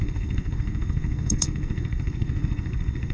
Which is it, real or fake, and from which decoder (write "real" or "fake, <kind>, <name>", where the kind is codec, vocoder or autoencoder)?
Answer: fake, codec, SNAC